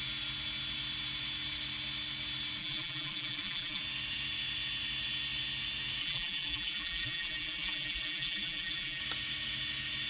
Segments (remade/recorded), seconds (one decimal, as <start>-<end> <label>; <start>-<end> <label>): 0.0-2.6 recorded; 2.6-3.8 remade; 3.8-6.0 recorded; 6.0-9.0 remade; 9.0-10.1 recorded